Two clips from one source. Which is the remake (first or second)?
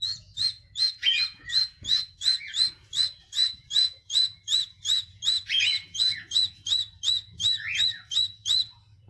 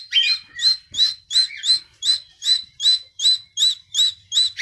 first